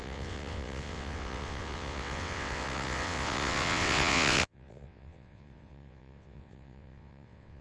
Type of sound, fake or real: fake